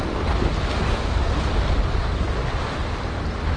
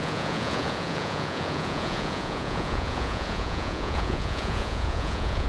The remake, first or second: second